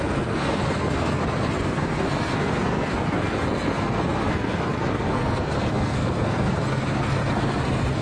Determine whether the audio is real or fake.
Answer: fake